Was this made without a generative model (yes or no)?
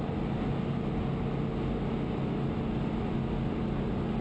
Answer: yes